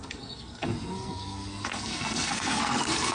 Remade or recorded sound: remade